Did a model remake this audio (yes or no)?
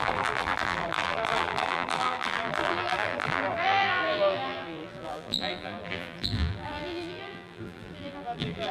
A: yes